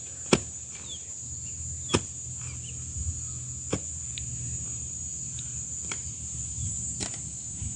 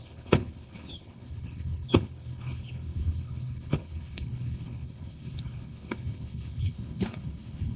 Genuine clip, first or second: first